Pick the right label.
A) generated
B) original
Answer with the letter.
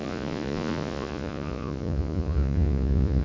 A